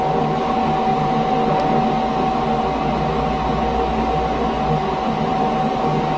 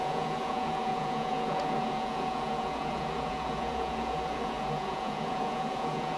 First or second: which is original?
first